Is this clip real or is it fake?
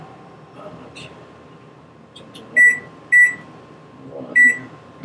real